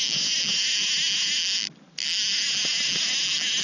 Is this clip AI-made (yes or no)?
no